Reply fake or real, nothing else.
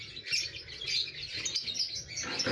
real